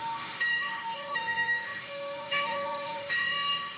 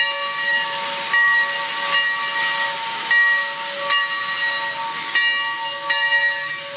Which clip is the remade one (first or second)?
first